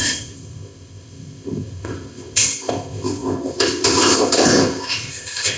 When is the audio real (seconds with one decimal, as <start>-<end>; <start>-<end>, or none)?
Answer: none

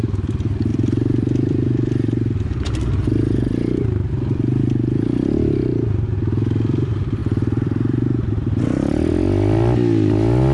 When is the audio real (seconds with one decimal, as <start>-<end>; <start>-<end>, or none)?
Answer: 0.0-0.7; 3.5-7.2; 9.1-10.5

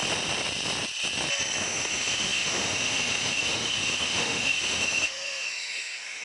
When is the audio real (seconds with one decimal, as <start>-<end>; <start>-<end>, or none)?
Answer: 0.0-1.6

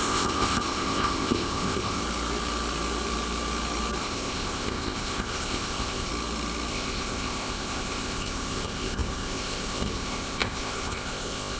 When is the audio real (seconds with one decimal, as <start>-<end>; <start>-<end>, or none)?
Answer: 2.0-4.0; 6.1-6.7

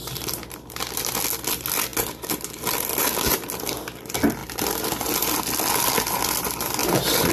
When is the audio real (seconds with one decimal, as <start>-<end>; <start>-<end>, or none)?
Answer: 0.0-4.4; 5.0-6.8